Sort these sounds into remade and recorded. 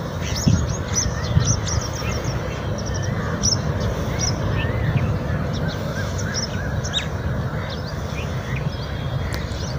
recorded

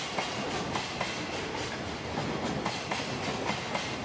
recorded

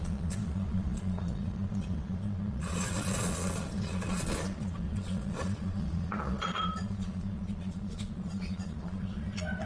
remade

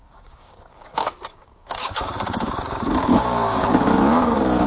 remade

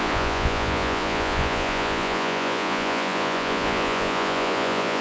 remade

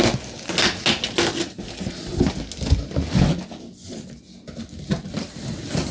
recorded